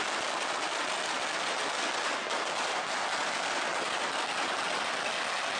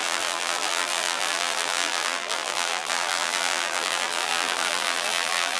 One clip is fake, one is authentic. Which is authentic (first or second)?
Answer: first